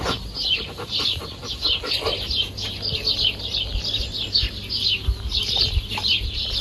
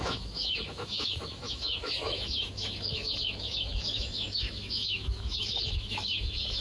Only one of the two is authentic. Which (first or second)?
first